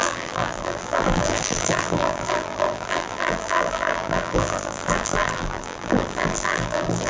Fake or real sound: fake